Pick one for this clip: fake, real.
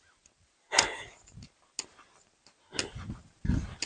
real